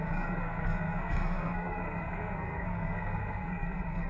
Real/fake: fake